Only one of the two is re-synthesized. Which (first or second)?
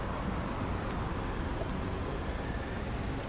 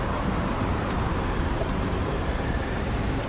second